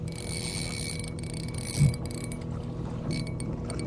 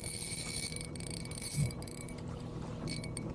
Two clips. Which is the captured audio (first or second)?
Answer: first